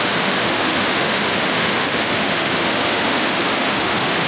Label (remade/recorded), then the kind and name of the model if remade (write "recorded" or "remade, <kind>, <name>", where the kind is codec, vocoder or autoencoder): remade, autoencoder, DAC-VAE